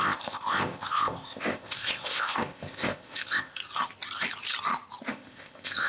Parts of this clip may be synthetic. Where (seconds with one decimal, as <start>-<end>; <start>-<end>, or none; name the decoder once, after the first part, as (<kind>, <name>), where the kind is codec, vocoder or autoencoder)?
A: 0.0-3.6 (codec, ZipCodec); 5.1-5.9